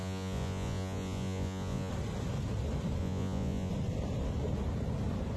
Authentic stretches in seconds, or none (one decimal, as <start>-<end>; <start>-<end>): 1.9-3.0; 3.7-5.4